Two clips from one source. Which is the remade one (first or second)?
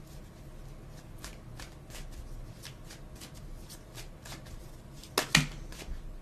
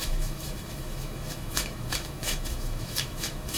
second